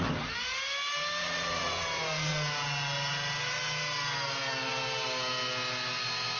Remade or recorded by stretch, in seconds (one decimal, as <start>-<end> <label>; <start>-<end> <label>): 0.0-1.2 recorded; 1.2-1.8 remade; 1.8-6.4 recorded